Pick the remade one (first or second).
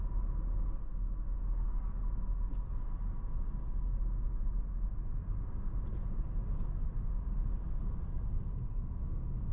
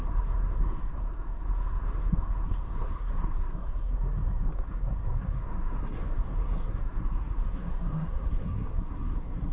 second